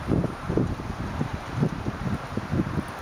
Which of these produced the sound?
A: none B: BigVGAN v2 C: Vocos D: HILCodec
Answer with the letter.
B